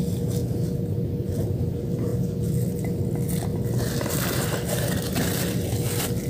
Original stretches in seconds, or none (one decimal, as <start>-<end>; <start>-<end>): 0.0-6.3